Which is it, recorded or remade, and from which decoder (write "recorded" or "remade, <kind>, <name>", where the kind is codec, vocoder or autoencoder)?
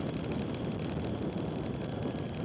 recorded